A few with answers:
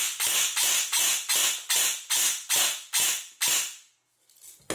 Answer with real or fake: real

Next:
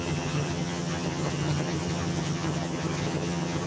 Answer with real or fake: fake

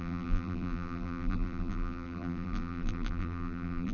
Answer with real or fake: fake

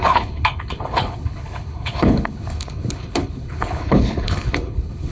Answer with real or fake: fake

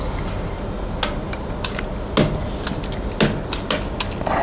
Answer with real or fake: real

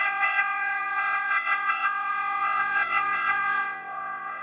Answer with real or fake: fake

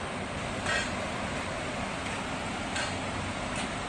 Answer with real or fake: real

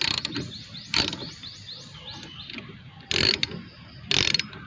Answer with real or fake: real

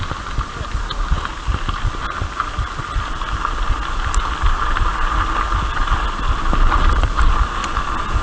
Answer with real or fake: real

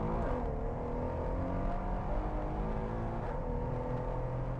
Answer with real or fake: real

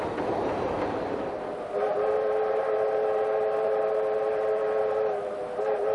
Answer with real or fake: fake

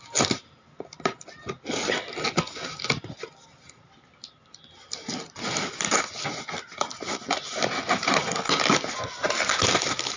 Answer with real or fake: real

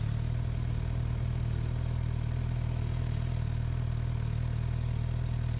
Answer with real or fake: real